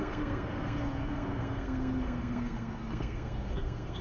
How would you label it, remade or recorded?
remade